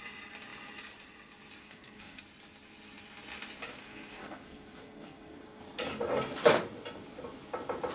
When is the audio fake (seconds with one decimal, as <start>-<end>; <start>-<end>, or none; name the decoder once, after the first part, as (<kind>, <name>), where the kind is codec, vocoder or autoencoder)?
1.6-2.2 (codec, SNAC); 3.8-5.6